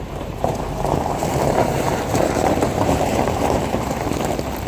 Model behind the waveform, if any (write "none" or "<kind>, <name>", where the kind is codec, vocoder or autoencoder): vocoder, BigVGAN v2